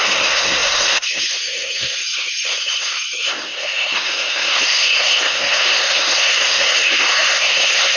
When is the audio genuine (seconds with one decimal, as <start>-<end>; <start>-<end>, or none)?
none